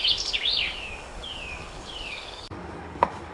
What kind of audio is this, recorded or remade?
remade